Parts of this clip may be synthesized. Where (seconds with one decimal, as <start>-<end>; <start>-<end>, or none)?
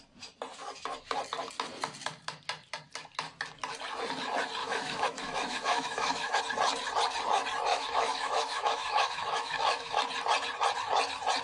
4.6-6.4; 7.7-10.0